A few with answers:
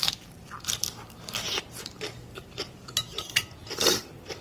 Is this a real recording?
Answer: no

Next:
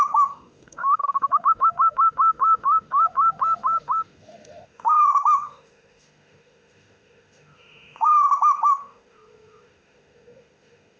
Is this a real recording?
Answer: no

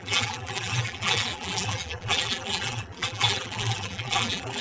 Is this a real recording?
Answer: no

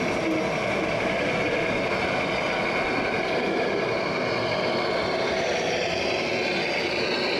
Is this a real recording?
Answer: yes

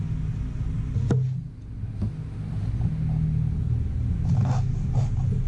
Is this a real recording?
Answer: yes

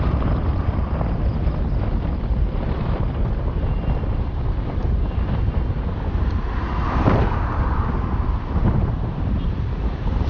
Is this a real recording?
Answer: no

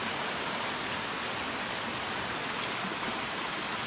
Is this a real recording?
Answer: yes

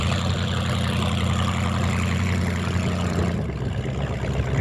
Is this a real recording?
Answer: yes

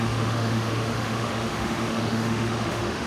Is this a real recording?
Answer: no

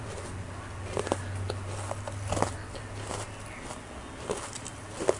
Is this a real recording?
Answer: yes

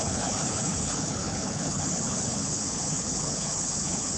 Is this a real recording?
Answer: no